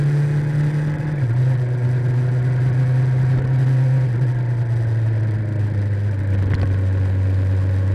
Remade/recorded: recorded